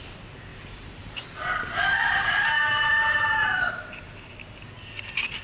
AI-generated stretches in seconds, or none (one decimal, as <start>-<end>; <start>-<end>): 0.5-3.7